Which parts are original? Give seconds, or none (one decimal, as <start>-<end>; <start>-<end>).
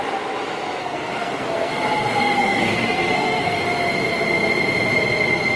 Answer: 0.0-0.8; 1.7-2.2; 3.6-5.6